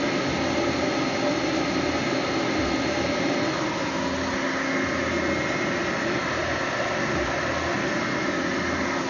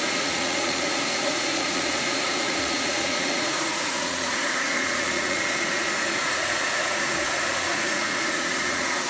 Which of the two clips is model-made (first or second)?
second